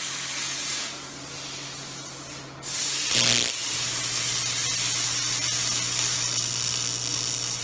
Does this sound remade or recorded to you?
recorded